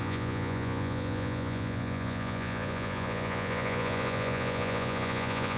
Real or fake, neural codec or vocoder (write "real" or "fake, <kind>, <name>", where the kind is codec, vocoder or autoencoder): fake, vocoder, Vocos